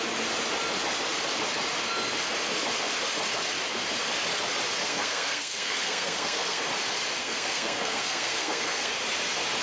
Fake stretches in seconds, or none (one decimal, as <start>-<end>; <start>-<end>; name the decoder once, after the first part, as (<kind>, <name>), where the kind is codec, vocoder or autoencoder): 4.8-6.6 (codec, SNAC); 7.2-8.9